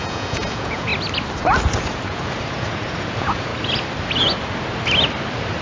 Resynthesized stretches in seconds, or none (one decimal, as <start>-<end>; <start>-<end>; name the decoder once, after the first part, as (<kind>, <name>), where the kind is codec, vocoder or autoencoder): 0.0-0.9 (vocoder, Vocos); 1.8-3.5